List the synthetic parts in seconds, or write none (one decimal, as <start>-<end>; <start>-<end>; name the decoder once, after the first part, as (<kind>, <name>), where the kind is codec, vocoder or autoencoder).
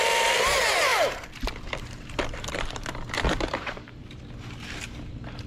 0.9-4.2 (vocoder, BigVGAN v2)